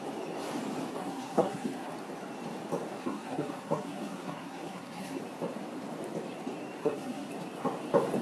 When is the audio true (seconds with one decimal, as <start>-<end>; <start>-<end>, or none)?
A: 0.0-1.0; 1.9-3.0; 5.2-6.8; 7.3-8.2